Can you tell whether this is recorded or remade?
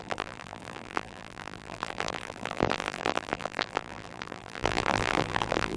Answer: remade